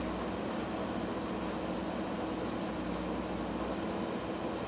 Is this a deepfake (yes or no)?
no